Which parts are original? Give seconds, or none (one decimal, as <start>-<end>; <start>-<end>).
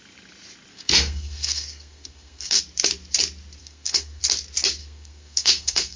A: 0.0-0.7; 2.6-3.6; 4.2-4.8